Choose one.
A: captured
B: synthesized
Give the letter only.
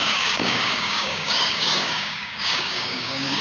B